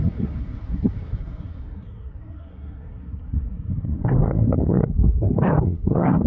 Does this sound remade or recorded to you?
remade